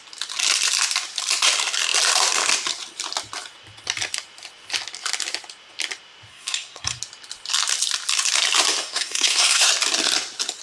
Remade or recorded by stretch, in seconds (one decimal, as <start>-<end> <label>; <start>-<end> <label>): 0.0-6.3 recorded; 6.3-7.0 remade; 7.0-8.8 recorded; 8.8-9.7 remade; 9.7-10.6 recorded